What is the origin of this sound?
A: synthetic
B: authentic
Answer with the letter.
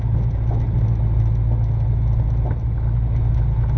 B